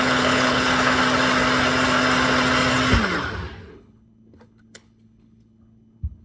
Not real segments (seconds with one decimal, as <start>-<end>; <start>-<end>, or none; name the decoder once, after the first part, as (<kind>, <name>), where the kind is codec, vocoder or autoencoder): 0.0-1.0 (codec, HILCodec); 3.7-6.2